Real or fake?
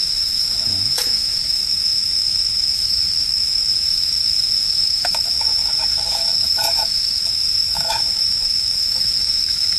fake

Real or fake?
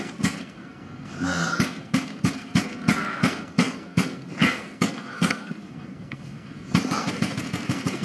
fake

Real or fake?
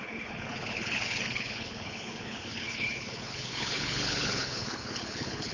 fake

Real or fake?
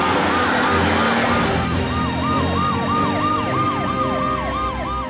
real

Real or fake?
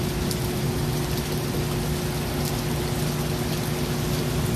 real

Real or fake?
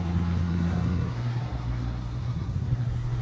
fake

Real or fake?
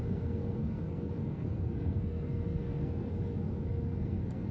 fake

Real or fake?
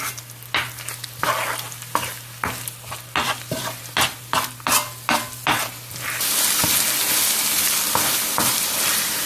real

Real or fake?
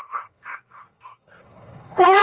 fake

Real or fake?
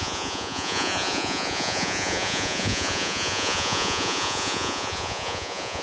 fake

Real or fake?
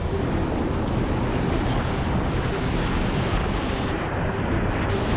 real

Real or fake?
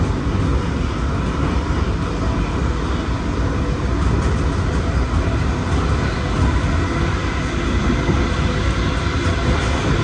real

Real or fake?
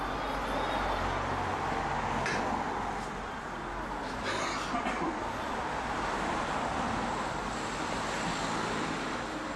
real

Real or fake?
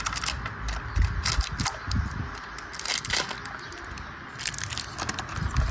real